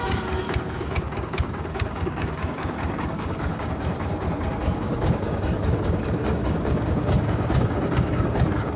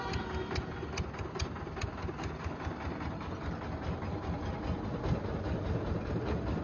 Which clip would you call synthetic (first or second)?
first